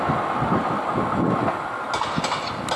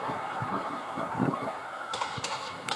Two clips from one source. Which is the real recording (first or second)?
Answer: first